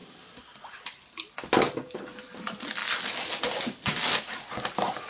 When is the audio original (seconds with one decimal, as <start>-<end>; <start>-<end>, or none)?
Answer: 2.8-3.4